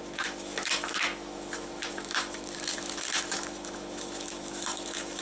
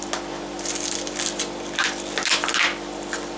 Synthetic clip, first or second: first